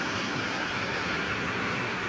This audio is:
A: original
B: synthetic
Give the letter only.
B